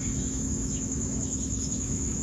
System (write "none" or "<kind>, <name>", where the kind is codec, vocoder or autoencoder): autoencoder, DAC-VAE